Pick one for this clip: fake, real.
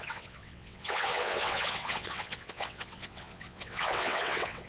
fake